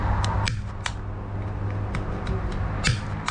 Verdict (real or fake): real